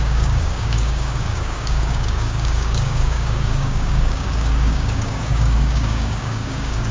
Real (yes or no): no